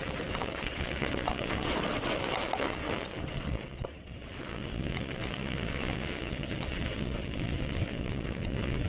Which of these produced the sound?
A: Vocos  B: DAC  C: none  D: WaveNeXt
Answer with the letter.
D